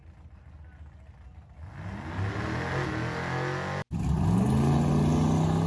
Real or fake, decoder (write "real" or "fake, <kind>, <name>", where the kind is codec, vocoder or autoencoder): real